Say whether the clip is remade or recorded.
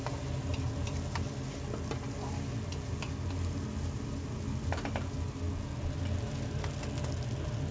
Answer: recorded